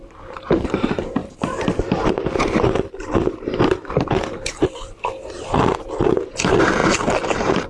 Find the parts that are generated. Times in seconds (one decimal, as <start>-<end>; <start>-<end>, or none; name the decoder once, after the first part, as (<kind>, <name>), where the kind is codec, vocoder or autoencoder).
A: 0.0-6.8 (vocoder, BigVGAN v2); 7.3-7.7